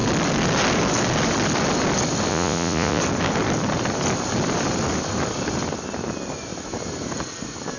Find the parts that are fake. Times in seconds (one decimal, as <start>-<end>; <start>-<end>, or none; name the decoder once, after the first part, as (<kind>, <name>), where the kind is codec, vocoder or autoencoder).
2.3-3.0 (vocoder, Vocos)